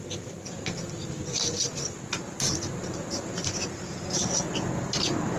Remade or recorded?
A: recorded